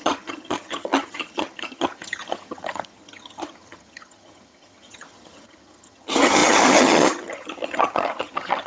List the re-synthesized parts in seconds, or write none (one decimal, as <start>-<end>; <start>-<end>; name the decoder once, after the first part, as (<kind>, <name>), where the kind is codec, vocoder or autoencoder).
0.0-8.7 (vocoder, HiFi-GAN)